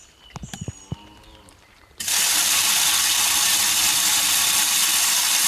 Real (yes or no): yes